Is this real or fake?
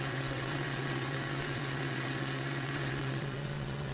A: fake